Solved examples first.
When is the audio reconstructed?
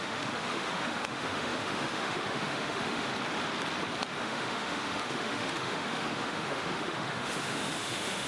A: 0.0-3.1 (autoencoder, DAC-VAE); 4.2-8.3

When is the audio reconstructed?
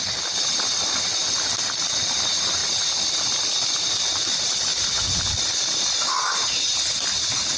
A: none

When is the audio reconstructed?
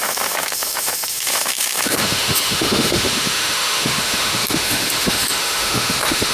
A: 0.0-6.3 (autoencoder, DAC-VAE)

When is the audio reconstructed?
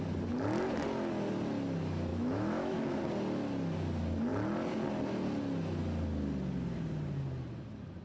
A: 2.1-3.0 (autoencoder, DAC-VAE)